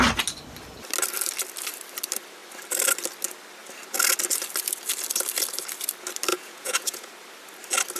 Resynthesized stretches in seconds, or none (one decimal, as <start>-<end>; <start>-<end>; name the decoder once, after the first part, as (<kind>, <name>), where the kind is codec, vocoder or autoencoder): 6.3-7.1 (vocoder, Vocos)